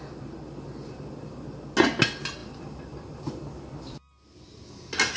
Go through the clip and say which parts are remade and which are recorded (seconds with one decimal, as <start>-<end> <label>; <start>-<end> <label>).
0.0-5.2 recorded